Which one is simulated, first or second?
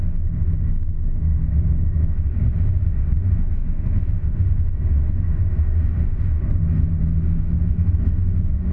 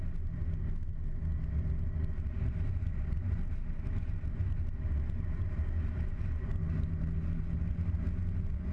first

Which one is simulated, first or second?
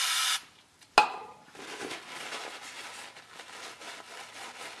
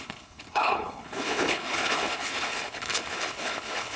second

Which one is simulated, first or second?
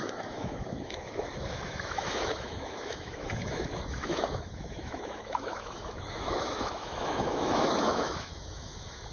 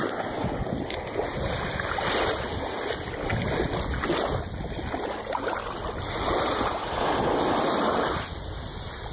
first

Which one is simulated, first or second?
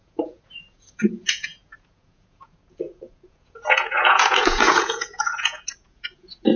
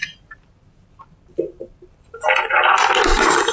first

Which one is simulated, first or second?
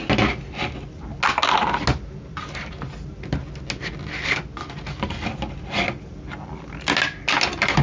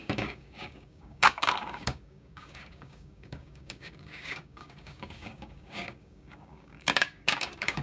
second